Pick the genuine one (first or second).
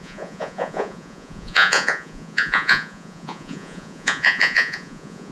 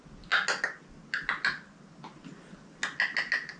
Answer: second